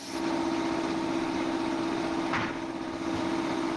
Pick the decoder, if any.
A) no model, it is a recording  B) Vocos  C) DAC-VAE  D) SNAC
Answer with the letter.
A